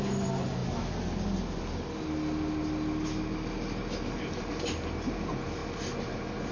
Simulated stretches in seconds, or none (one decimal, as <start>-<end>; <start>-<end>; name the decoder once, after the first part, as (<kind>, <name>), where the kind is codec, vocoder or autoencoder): none